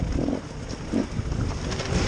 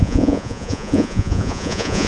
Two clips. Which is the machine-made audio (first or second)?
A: second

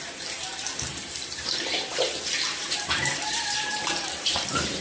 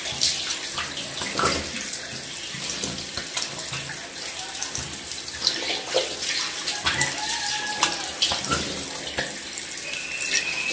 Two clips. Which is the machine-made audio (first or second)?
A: first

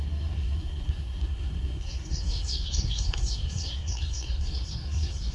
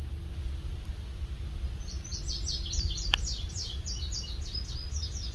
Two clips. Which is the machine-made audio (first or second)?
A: first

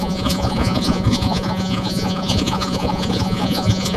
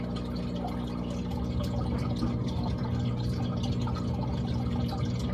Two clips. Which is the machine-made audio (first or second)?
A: first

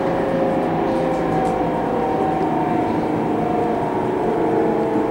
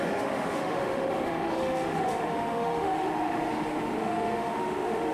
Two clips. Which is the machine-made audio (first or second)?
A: second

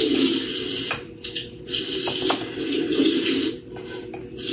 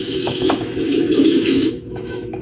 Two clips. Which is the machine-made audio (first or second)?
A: second